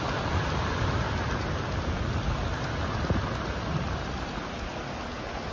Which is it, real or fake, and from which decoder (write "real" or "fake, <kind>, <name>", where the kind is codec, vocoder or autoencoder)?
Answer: real